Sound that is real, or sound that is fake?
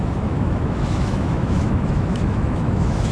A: fake